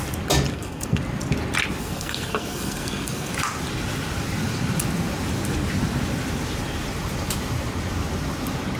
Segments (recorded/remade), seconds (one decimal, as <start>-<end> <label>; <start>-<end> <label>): 0.0-0.5 recorded; 0.5-1.0 remade; 1.0-1.8 recorded; 1.8-3.3 remade; 3.3-8.8 recorded